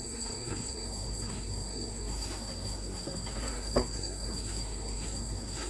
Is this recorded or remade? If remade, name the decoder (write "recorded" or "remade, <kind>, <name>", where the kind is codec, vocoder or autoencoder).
remade, codec, SNAC